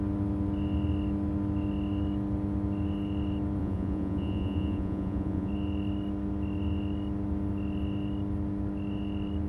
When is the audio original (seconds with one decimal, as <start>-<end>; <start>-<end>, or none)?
0.0-3.6; 5.5-9.5